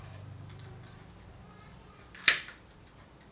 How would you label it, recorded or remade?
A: recorded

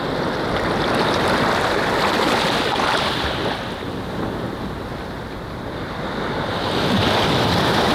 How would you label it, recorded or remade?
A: recorded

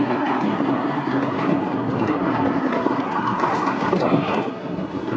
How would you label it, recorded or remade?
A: remade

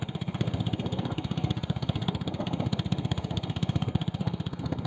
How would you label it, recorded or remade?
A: remade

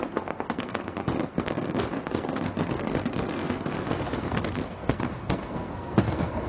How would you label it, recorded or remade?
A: remade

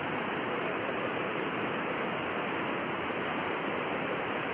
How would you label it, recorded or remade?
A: remade